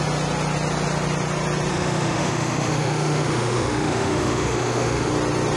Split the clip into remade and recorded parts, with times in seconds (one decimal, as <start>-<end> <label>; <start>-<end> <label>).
0.0-1.7 recorded; 1.7-5.1 remade; 5.1-5.6 recorded